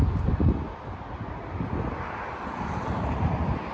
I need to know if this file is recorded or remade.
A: remade